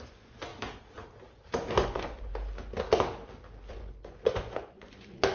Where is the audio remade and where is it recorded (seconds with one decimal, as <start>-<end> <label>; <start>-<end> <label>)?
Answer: 0.0-0.5 remade; 0.5-1.7 recorded; 1.7-2.3 remade; 2.3-3.7 recorded; 3.7-5.3 remade